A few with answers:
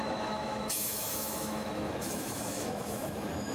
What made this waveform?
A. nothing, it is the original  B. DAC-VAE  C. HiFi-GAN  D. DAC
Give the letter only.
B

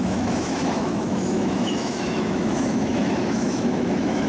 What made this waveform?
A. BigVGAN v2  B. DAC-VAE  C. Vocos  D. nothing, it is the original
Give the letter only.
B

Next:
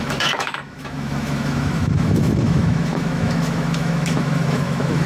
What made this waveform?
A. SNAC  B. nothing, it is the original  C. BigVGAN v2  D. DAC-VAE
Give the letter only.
D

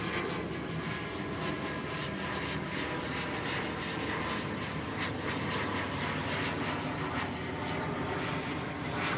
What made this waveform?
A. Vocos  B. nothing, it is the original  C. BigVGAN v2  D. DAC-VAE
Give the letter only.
B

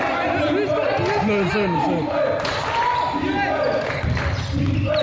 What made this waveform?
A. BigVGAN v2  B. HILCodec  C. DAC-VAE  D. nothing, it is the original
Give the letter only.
D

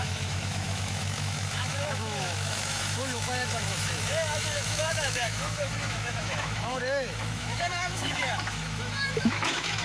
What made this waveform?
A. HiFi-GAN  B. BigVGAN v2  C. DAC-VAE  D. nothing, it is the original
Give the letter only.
C